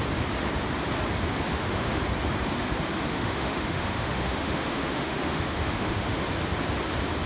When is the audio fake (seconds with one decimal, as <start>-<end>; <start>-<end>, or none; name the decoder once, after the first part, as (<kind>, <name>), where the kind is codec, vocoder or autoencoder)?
1.5-2.0 (autoencoder, DAC-VAE); 3.1-6.2